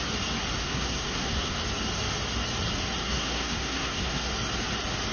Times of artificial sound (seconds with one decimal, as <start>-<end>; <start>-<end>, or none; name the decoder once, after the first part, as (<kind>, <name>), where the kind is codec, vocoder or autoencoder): 0.6-1.6 (codec, SNAC); 3.0-4.3